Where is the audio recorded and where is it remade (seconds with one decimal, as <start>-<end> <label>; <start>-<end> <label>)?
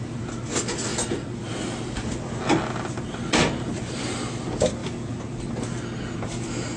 0.0-6.8 recorded